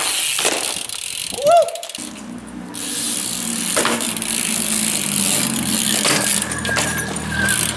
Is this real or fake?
real